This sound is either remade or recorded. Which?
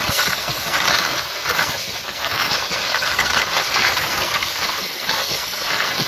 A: remade